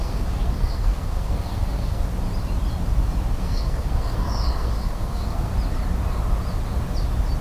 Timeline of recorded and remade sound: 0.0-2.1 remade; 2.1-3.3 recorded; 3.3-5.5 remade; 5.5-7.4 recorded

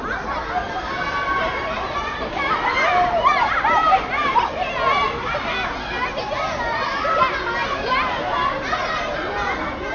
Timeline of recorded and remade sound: 0.0-3.3 recorded; 3.3-4.1 remade; 4.1-9.9 recorded

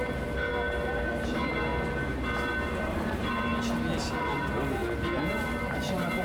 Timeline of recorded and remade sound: 0.0-0.5 remade; 0.5-1.1 recorded; 1.1-1.7 remade; 1.7-2.7 recorded; 2.7-3.5 remade; 3.5-4.2 recorded; 4.2-4.8 remade; 4.8-5.7 recorded; 5.7-6.2 remade

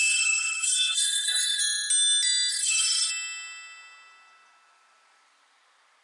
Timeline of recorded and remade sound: 0.0-1.6 remade; 1.6-2.5 recorded; 2.5-3.1 remade; 3.1-6.0 recorded

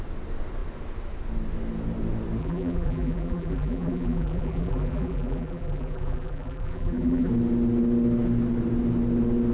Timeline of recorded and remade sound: 0.0-2.4 recorded; 2.4-7.3 remade; 7.3-9.5 recorded